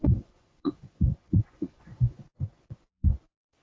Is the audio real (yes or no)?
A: no